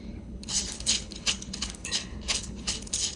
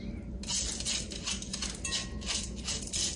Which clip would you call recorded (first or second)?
second